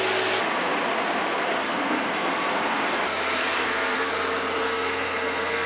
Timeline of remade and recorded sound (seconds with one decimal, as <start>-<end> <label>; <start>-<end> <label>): 0.0-1.5 recorded; 1.5-3.0 remade; 3.0-3.4 recorded; 3.4-4.1 remade; 4.1-4.6 recorded; 4.6-5.7 remade